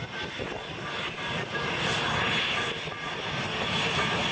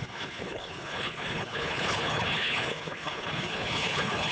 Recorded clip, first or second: first